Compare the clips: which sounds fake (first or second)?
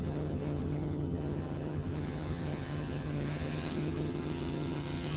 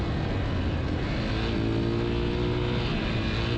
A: first